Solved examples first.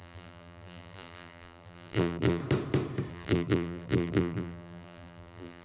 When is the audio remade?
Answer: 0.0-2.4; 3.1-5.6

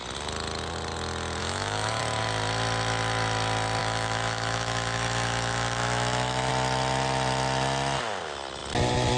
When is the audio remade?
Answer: 1.4-2.0; 3.8-6.5

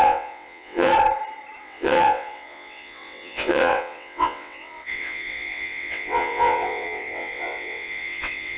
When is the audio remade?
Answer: 0.0-0.9; 1.6-8.6

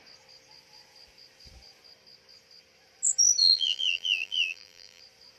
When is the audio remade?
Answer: 3.4-5.0

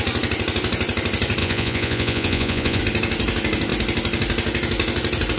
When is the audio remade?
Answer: 1.4-2.8